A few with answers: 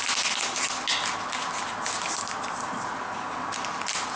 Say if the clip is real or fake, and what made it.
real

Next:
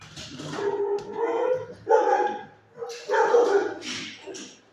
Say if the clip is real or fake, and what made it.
real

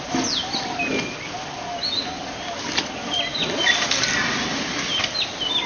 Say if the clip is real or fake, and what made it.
real